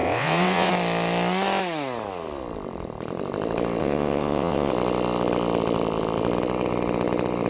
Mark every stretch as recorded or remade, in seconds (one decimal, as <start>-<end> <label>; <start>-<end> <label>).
0.0-0.7 remade; 0.7-3.8 recorded; 3.8-4.7 remade; 4.7-7.5 recorded